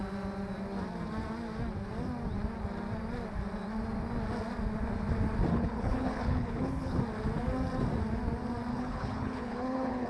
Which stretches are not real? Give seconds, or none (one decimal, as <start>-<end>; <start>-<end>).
5.5-7.0; 8.7-10.1

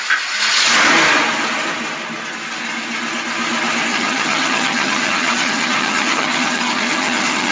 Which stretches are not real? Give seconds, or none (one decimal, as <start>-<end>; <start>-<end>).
3.9-7.5

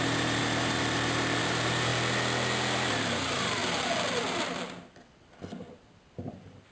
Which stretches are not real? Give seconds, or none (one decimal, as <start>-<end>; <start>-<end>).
0.0-1.9; 2.9-3.6; 6.3-6.7

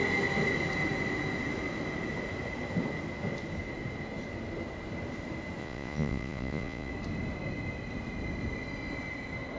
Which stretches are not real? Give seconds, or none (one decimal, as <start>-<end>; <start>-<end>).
5.6-6.9

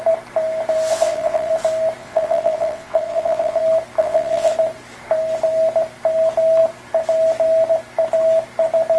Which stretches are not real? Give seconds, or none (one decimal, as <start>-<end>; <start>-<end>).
0.9-1.5; 2.0-3.6; 4.0-4.5

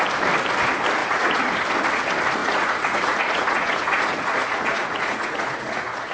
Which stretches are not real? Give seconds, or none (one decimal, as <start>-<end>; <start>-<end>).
1.0-1.5; 2.4-6.1